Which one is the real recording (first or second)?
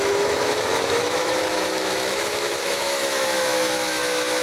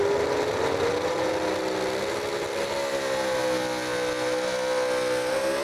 second